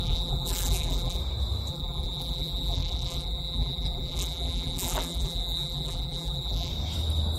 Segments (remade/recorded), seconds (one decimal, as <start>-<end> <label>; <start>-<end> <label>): 0.0-1.2 remade; 1.2-1.7 recorded; 1.7-6.7 remade; 6.7-7.4 recorded